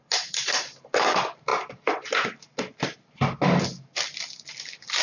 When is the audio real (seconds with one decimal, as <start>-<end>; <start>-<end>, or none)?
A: 0.0-5.0